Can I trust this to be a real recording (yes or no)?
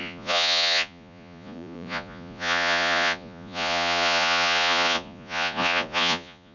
no